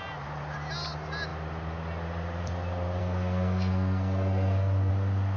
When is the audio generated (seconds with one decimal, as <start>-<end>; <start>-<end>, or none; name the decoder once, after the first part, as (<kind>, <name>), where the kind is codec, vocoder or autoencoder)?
3.0-4.9 (codec, SNAC)